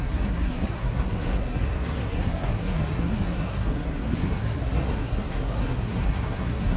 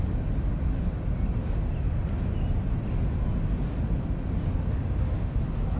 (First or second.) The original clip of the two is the second